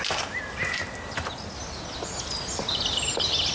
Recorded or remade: recorded